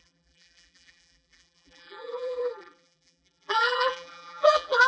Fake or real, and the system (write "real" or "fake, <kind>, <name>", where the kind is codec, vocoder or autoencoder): fake, vocoder, BigVGAN v2